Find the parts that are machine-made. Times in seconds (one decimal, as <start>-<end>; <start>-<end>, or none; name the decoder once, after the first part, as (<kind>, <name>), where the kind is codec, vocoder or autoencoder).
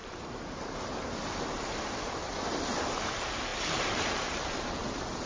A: 0.0-2.2 (vocoder, BigVGAN v2); 3.1-5.3